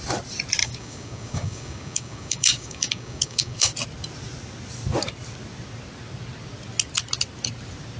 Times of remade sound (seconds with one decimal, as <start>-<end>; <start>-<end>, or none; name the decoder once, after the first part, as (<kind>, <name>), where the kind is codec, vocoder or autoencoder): 0.6-3.7 (codec, DAC)